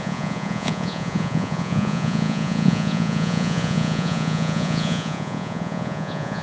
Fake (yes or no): yes